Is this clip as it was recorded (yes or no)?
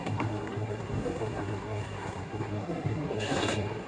no